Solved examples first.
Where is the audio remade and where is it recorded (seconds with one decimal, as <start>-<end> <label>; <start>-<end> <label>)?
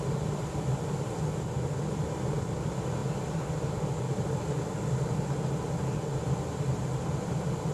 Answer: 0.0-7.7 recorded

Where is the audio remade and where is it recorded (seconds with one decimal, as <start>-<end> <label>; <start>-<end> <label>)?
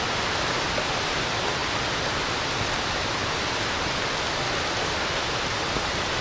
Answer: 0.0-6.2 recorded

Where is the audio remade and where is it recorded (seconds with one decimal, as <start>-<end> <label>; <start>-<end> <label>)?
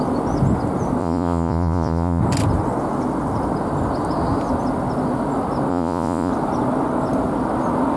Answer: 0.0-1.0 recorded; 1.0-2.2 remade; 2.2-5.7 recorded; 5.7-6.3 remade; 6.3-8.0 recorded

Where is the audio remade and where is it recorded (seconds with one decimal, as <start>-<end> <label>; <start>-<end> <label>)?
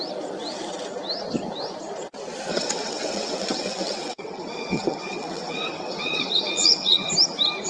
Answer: 0.0-2.5 recorded; 2.5-7.1 remade; 7.1-7.7 recorded